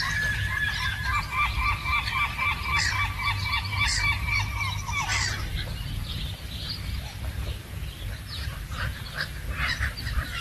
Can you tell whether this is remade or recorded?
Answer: recorded